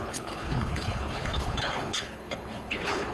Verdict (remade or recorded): remade